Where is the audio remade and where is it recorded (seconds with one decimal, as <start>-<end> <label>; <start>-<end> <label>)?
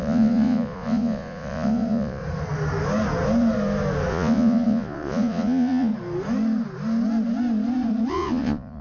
0.0-2.2 remade; 2.2-4.1 recorded; 4.1-5.9 remade; 5.9-8.1 recorded; 8.1-8.8 remade